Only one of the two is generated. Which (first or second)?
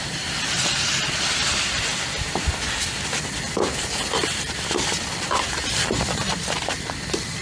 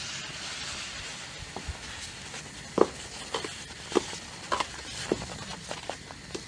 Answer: first